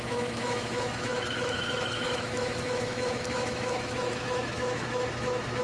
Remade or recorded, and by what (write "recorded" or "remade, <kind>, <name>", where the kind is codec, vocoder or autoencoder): remade, autoencoder, DAC-VAE